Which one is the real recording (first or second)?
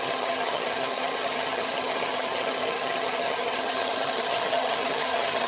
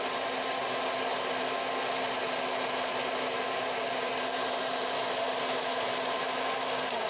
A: second